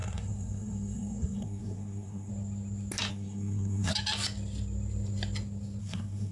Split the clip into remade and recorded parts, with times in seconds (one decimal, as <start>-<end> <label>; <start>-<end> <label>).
0.0-2.3 remade; 2.3-3.1 recorded; 3.1-3.9 remade; 3.9-5.8 recorded; 5.8-6.3 remade